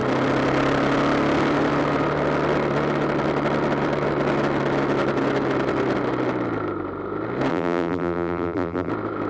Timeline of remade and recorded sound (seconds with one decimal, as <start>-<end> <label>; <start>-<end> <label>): 0.0-7.5 recorded; 7.5-8.9 remade; 8.9-9.3 recorded